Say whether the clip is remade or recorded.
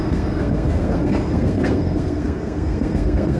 remade